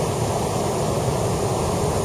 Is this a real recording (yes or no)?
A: yes